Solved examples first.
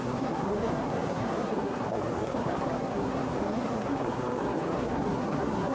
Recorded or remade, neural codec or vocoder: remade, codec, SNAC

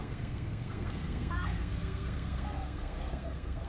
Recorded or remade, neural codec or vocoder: remade, codec, SNAC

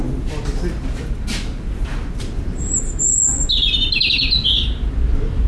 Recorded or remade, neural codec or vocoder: recorded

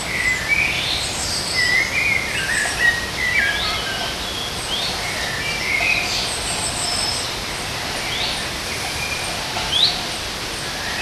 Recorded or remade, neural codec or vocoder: recorded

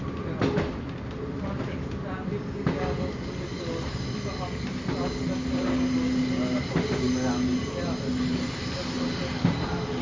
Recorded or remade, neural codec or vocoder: recorded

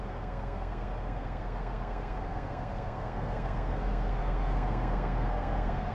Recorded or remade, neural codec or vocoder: remade, codec, SNAC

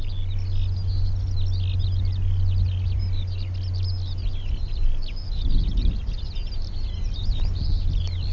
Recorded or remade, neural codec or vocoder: recorded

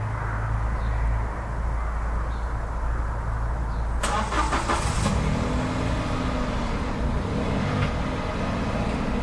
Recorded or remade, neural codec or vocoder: recorded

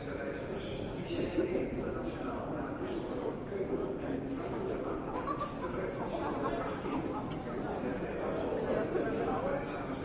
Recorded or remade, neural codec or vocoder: recorded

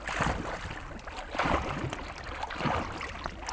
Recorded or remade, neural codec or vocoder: recorded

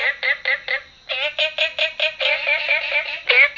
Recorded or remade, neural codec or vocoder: recorded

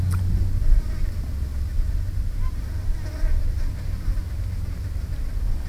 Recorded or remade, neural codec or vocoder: recorded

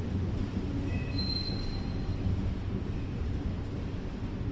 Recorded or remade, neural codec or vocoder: recorded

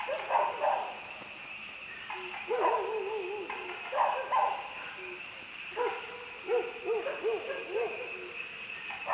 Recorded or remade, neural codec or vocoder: recorded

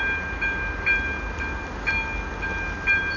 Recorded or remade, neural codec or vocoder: recorded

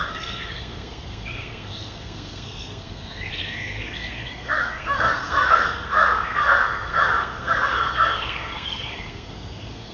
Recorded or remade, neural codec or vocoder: remade, codec, SNAC